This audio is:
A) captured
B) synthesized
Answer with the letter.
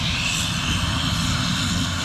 A